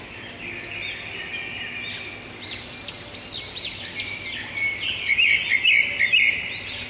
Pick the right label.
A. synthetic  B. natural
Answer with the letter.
B